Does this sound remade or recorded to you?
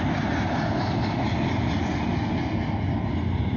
recorded